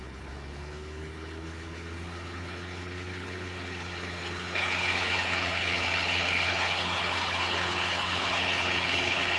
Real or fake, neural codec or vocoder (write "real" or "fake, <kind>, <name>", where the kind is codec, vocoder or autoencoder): fake, codec, HILCodec